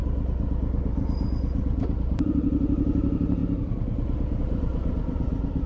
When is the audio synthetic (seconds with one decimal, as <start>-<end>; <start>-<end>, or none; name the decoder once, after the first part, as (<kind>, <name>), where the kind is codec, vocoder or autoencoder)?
2.0-3.4 (vocoder, BigVGAN v2); 4.4-5.7